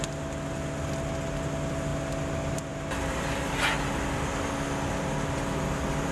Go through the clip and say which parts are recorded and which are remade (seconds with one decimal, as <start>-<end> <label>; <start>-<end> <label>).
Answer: 0.0-6.1 recorded